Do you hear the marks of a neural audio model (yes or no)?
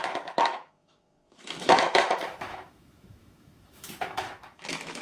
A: yes